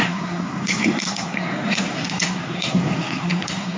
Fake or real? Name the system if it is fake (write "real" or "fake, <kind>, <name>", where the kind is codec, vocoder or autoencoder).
fake, codec, SNAC